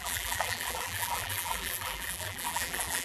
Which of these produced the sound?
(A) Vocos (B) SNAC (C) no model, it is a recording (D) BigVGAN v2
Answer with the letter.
D